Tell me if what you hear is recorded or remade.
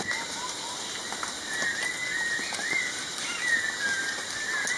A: recorded